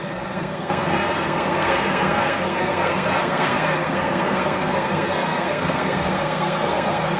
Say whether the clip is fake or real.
fake